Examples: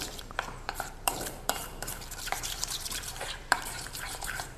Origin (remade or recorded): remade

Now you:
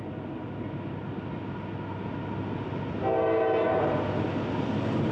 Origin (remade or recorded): recorded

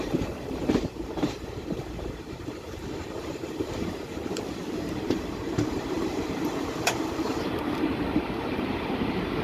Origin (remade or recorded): remade